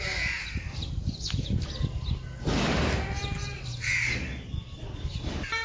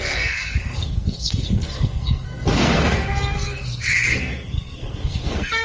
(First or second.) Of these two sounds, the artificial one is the second